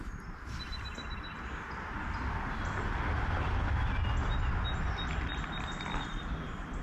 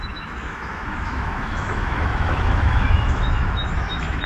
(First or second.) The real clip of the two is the first